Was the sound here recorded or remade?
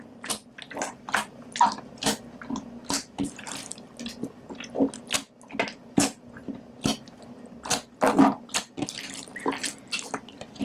recorded